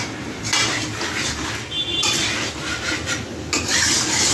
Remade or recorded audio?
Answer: recorded